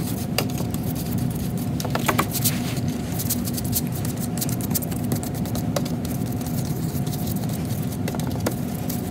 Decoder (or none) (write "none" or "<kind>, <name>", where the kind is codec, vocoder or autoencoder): none